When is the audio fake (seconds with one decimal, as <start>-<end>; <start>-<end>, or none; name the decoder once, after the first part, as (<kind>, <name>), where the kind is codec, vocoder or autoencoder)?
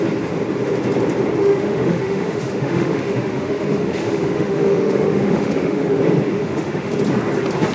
1.4-6.0 (autoencoder, DAC-VAE); 6.4-6.9